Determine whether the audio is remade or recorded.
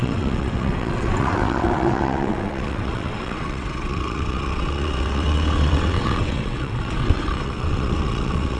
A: remade